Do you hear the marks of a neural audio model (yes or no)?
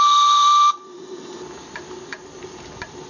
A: no